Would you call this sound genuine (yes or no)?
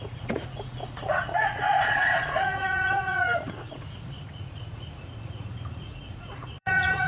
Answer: no